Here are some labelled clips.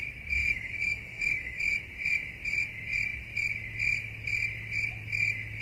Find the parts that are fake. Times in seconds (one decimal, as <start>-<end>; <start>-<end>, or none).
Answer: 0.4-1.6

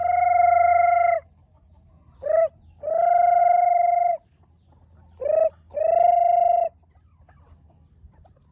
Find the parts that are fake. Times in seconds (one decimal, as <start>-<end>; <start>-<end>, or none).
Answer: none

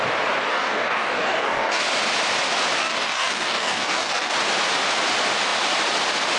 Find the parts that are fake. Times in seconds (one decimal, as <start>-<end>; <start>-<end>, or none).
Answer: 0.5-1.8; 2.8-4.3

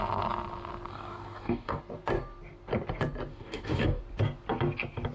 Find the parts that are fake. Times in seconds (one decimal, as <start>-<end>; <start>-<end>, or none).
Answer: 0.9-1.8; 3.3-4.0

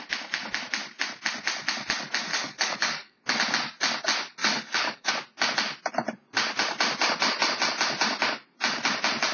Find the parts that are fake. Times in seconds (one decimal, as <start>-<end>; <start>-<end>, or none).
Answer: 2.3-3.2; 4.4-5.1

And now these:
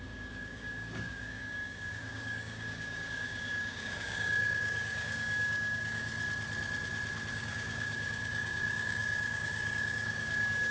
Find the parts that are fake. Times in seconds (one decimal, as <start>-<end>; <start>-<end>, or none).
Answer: 0.0-6.1; 7.3-10.7